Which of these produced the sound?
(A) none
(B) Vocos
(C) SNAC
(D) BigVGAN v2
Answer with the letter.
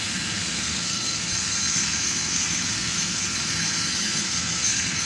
C